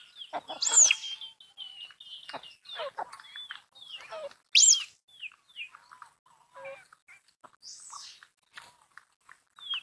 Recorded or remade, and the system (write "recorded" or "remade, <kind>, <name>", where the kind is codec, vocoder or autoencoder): recorded